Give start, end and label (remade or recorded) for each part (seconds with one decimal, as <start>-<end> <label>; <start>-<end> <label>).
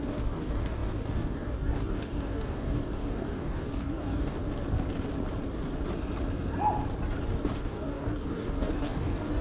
0.0-4.4 remade; 4.4-7.5 recorded; 7.5-9.4 remade